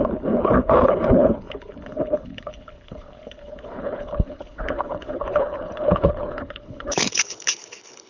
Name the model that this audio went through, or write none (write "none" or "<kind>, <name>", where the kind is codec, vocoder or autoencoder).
codec, HILCodec